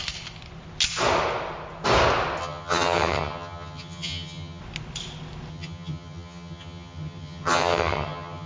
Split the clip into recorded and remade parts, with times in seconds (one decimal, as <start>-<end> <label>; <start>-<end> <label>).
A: 0.0-2.4 recorded; 2.4-4.6 remade; 4.6-5.5 recorded; 5.5-8.5 remade